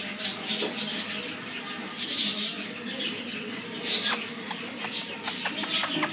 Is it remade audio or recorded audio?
recorded